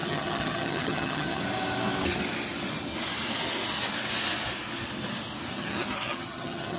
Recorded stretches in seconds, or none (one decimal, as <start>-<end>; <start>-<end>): 1.4-5.5

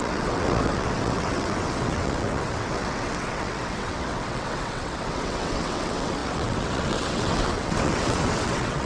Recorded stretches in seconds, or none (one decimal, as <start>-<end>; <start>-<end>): none

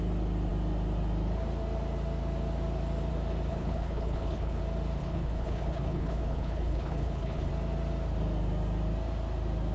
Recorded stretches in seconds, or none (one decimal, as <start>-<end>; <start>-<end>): 0.0-3.5; 4.6-5.0; 7.5-9.7

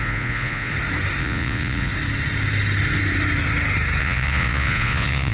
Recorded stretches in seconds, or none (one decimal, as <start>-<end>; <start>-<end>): 0.7-1.2; 1.9-4.0

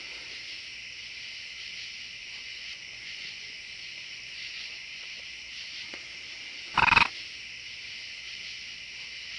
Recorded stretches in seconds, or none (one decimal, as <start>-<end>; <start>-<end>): 0.0-2.2; 5.2-9.4

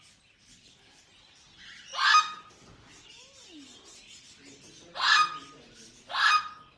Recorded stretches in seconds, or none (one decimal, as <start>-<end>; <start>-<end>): 0.0-6.8

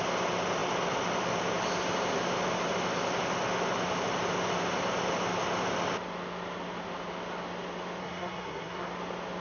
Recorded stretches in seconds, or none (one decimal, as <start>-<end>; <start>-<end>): 0.0-8.0; 8.9-9.4

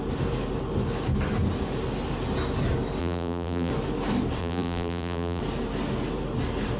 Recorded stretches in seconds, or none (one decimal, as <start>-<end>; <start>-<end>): 0.0-3.0; 3.7-4.4; 5.4-6.8